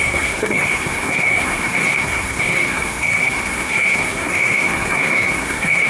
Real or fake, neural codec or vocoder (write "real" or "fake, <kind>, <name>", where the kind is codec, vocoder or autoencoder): fake, codec, SNAC